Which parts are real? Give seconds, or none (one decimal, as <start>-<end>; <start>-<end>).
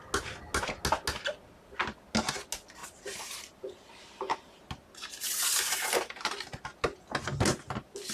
0.0-2.8; 4.6-8.1